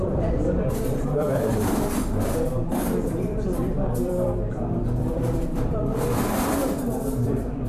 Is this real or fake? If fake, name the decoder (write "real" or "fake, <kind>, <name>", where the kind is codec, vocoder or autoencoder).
fake, vocoder, BigVGAN v2